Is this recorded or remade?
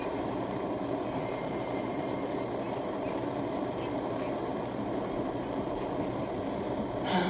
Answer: remade